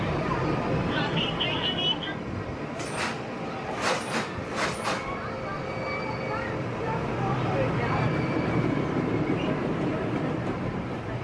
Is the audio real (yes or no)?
yes